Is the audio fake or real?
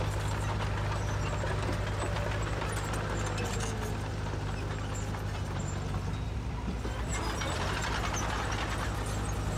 real